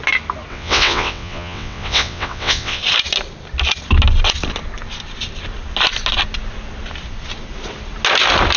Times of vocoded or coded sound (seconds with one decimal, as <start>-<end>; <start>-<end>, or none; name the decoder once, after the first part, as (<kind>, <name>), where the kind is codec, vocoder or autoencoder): 0.5-2.8 (vocoder, WaveNeXt)